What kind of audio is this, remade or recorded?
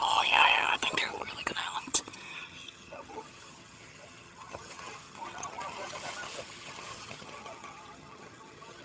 remade